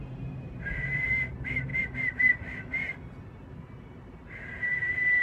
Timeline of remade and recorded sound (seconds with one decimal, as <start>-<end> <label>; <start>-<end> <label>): 0.0-1.7 remade; 1.7-4.8 recorded; 4.8-5.2 remade